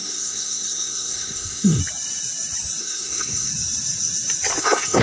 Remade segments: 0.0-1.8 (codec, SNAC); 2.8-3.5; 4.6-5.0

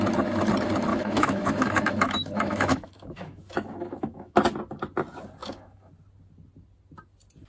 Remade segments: 0.9-4.4 (autoencoder, DAC-VAE); 5.4-5.9

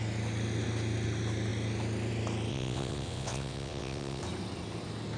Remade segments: 2.5-4.2 (vocoder, WaveNeXt)

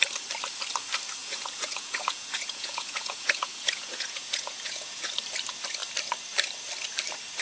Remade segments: 1.2-5.1 (vocoder, Vocos)